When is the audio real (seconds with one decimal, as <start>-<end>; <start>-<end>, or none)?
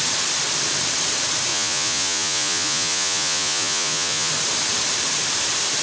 0.0-1.5; 4.3-5.8